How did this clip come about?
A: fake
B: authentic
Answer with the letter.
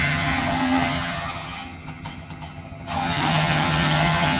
A